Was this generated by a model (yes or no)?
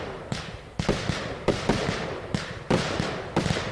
yes